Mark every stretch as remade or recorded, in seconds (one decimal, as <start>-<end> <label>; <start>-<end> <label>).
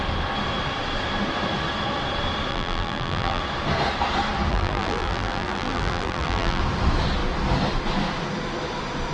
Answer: 0.0-2.5 recorded; 2.5-3.4 remade; 3.4-4.5 recorded; 4.5-6.6 remade; 6.6-9.1 recorded